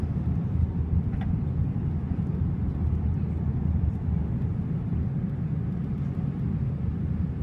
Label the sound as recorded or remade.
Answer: recorded